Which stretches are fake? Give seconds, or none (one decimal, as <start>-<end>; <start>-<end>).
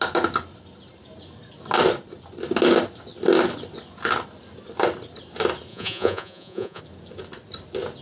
5.7-6.8